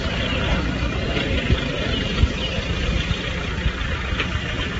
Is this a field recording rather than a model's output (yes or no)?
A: yes